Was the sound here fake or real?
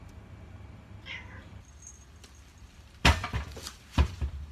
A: fake